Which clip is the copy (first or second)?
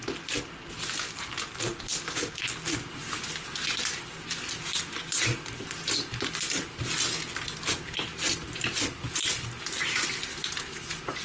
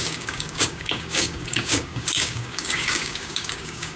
second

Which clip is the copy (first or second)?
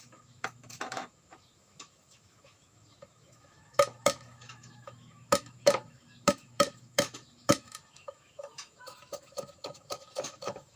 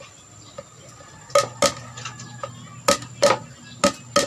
first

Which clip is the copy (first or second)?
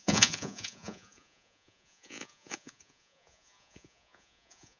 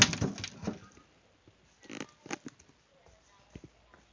first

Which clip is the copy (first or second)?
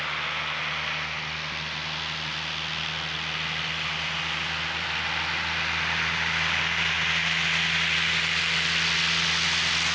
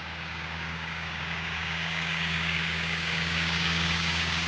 second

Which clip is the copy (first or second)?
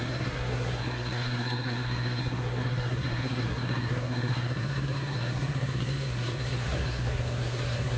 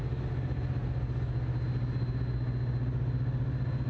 first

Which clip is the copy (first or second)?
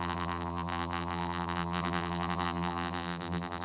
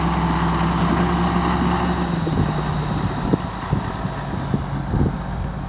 first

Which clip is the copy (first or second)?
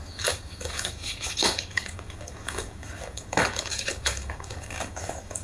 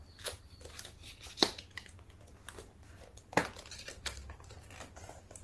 first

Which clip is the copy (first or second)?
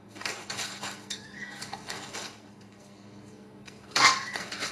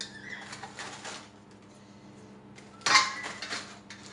first